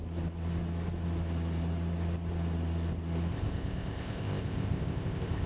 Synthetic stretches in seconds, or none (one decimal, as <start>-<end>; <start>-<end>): 3.3-5.5